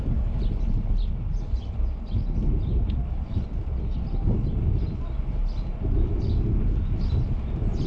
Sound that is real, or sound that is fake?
real